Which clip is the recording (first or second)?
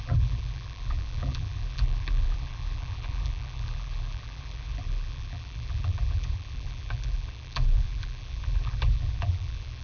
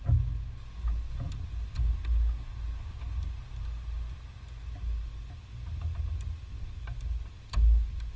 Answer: second